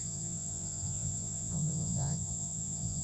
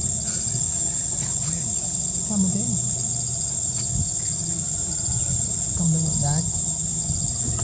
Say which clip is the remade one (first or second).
first